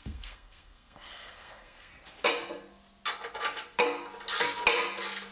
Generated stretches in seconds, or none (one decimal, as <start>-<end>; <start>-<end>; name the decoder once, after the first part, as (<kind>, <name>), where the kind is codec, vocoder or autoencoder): 0.0-1.9 (codec, SNAC)